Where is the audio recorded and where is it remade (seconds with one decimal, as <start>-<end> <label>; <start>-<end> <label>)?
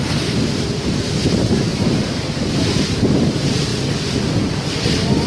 0.0-3.7 remade; 3.7-5.3 recorded